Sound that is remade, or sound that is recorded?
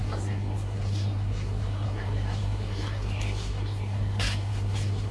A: remade